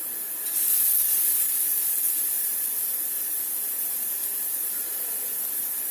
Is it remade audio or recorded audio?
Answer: recorded